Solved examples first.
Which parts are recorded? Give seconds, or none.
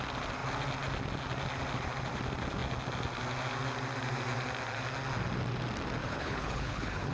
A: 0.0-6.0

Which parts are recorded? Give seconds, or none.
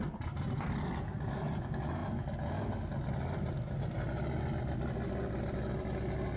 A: 0.0-6.4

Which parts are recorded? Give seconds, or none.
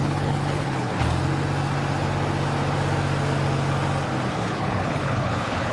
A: 0.9-4.3